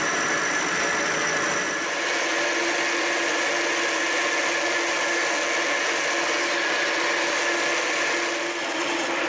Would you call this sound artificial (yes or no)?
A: no